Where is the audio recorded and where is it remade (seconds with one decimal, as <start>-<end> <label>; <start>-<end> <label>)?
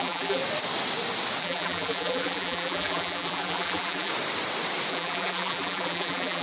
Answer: 0.0-0.4 remade; 0.4-1.4 recorded; 1.4-4.1 remade; 4.1-4.9 recorded; 4.9-6.4 remade